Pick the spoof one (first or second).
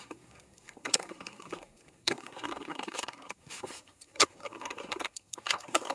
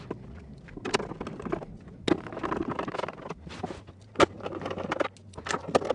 first